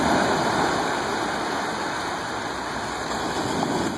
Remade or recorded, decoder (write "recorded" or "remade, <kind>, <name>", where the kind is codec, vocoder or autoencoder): remade, vocoder, BigVGAN v2